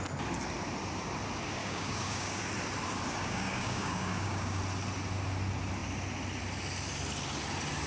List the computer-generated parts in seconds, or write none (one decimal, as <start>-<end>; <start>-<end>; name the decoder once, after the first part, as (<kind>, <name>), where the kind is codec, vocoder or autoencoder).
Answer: 1.6-2.4 (codec, DAC); 3.2-4.6